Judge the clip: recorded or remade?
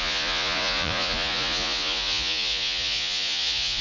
remade